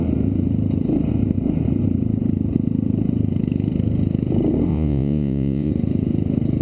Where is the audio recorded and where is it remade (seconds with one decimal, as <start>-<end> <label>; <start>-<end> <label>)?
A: 0.0-4.7 recorded; 4.7-5.7 remade; 5.7-6.6 recorded